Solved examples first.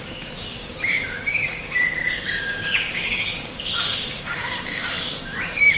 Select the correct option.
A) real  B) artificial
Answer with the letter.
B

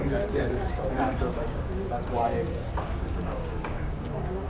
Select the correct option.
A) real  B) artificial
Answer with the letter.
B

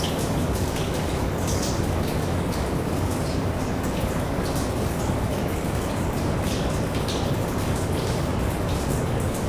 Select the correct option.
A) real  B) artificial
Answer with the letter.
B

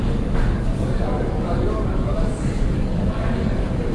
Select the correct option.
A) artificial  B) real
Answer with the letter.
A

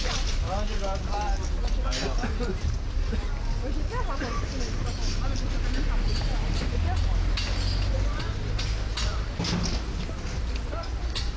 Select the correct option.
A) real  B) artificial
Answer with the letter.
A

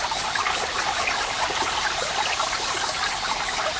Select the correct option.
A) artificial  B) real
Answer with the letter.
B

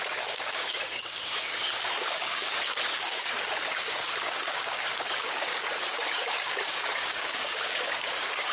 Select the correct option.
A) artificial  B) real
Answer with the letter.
A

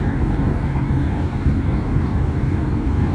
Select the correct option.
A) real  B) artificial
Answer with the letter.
B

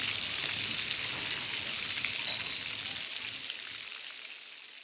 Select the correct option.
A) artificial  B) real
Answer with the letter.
B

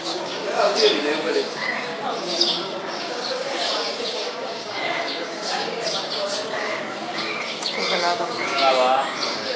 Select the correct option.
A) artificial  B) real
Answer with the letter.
A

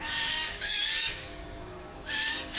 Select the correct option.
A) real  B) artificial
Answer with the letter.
B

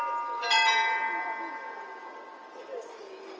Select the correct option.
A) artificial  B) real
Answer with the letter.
B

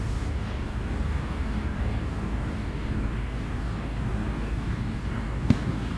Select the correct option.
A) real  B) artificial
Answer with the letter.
B